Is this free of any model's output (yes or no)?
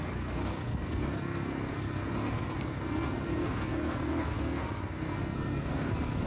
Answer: no